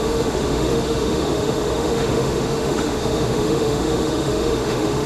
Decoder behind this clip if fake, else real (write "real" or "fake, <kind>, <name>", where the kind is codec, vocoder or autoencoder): fake, autoencoder, DAC-VAE